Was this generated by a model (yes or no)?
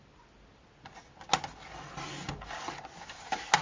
no